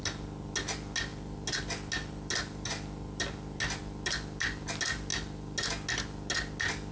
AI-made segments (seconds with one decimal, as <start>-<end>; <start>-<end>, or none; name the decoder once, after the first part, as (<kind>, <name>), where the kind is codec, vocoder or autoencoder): none